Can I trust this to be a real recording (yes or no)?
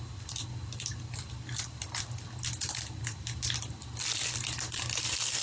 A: yes